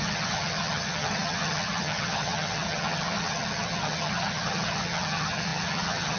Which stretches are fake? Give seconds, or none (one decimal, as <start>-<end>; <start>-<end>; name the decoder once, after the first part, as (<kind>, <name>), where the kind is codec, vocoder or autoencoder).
0.0-6.2 (vocoder, HiFi-GAN)